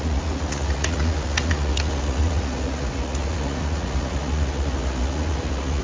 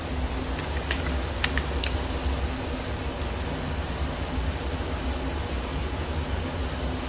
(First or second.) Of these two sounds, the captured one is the second